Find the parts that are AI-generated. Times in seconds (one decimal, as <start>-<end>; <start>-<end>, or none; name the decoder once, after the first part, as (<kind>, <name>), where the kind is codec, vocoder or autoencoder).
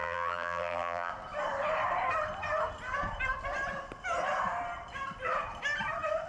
0.0-1.1 (vocoder, BigVGAN v2)